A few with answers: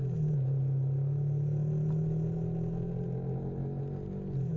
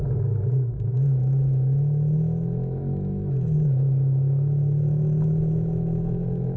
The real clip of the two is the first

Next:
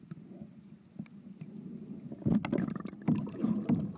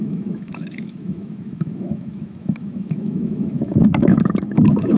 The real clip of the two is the first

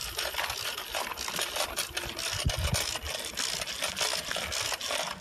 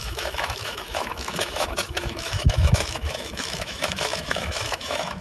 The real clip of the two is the first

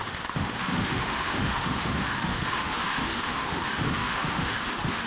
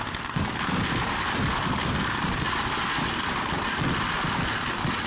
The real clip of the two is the second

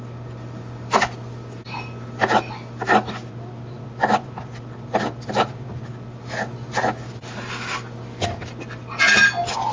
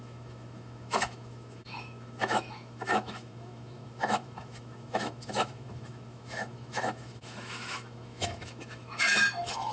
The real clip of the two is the first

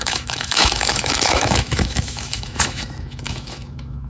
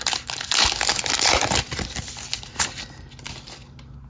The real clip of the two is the second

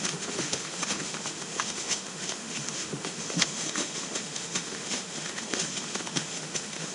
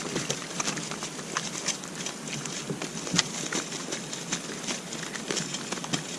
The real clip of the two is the second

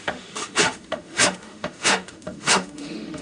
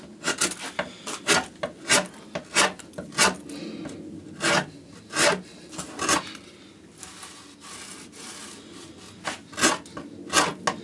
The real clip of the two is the second